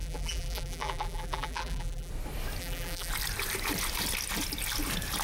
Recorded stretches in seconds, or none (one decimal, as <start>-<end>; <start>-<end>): 2.1-2.6; 3.1-5.2